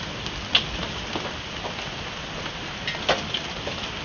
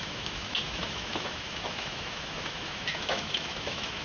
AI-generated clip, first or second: second